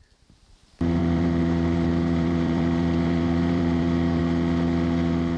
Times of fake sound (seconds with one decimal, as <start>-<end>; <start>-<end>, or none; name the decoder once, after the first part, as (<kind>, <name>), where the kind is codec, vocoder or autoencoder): 1.0-4.2 (vocoder, BigVGAN v2)